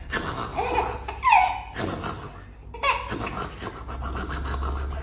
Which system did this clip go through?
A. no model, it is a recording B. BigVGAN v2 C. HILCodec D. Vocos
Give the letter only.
A